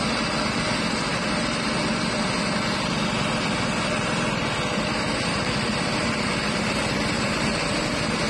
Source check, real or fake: real